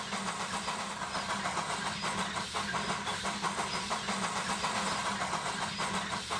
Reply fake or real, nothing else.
real